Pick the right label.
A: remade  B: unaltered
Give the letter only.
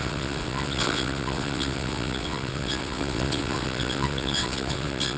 A